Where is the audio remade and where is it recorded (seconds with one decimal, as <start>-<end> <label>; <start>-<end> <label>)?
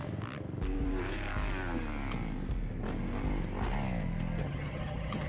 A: 0.0-4.4 recorded; 4.4-5.3 remade